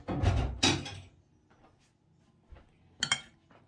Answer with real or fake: real